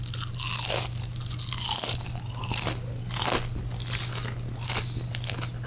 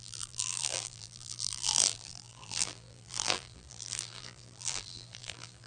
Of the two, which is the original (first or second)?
first